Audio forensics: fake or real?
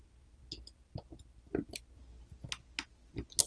real